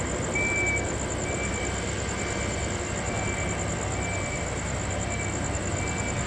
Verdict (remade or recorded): recorded